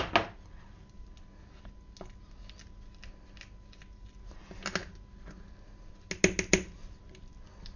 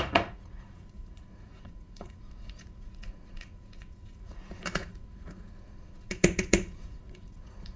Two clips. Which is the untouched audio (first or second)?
first